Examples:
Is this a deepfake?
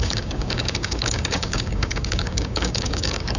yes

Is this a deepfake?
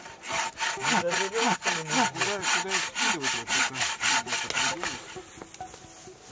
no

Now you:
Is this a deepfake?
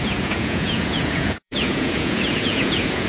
yes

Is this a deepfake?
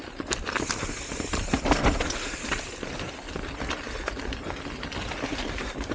no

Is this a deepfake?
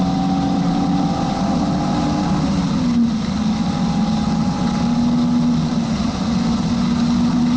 no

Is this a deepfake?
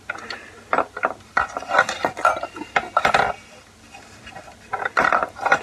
no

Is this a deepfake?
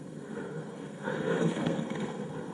yes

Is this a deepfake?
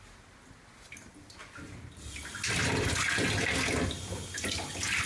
no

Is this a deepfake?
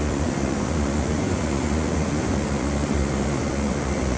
yes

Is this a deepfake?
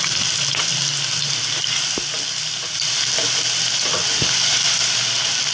no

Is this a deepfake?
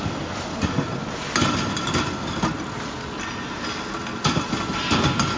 no